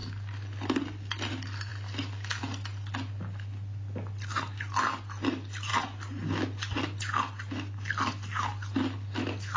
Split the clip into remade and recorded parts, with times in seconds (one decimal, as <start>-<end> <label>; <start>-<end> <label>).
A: 0.0-9.6 recorded